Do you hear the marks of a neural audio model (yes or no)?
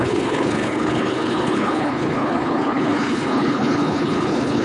yes